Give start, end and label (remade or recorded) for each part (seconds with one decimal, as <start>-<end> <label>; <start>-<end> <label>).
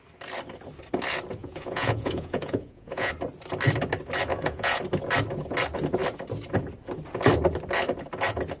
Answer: 0.0-1.4 recorded; 1.4-3.1 remade; 3.1-4.3 recorded; 4.3-4.8 remade; 4.8-8.6 recorded